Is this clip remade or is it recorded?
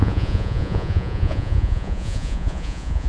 remade